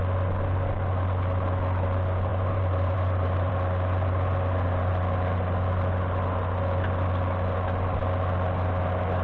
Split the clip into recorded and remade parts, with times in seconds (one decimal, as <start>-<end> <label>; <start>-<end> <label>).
0.0-2.3 recorded; 2.3-3.5 remade; 3.5-9.2 recorded